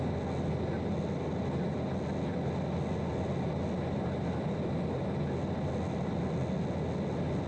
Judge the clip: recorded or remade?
recorded